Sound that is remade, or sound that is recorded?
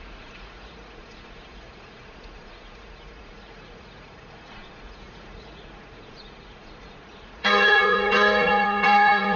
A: remade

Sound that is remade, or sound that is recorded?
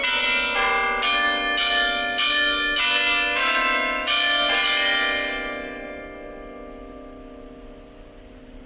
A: recorded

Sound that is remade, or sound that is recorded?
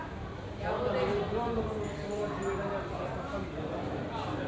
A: recorded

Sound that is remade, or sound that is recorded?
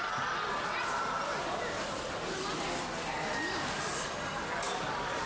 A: recorded